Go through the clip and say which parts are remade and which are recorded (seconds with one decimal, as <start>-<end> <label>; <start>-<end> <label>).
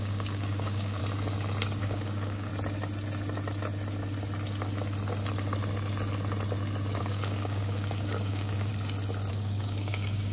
0.0-1.0 remade; 1.0-1.8 recorded; 1.8-2.5 remade; 2.5-7.0 recorded; 7.0-8.7 remade; 8.7-9.3 recorded; 9.3-10.3 remade